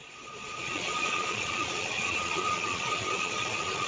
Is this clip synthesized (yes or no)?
yes